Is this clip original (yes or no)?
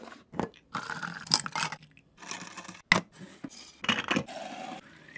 yes